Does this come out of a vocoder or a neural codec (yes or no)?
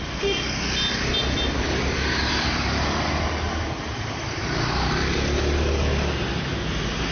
no